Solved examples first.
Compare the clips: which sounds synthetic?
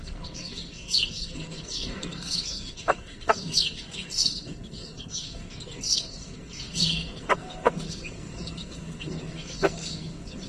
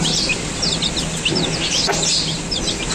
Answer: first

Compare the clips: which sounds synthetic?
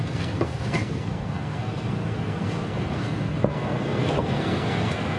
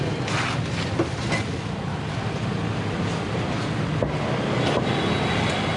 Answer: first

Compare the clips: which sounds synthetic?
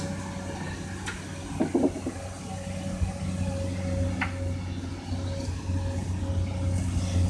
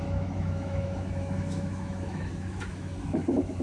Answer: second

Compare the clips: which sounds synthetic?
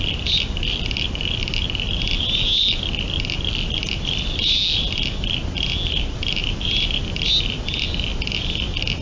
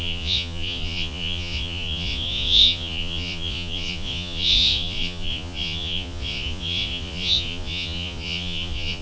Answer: second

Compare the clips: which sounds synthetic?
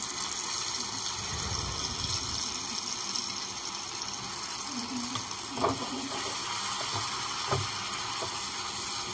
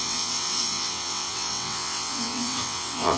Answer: second